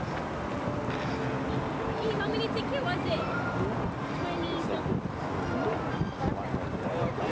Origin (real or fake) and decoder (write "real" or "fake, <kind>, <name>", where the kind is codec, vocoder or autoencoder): real